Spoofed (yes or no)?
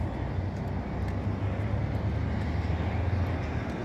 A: no